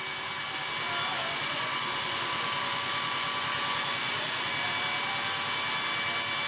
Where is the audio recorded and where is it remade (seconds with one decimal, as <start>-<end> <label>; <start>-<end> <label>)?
0.0-1.2 recorded; 1.2-4.5 remade; 4.5-6.5 recorded